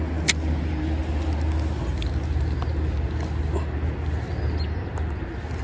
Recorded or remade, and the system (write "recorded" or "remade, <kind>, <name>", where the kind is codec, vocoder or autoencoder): recorded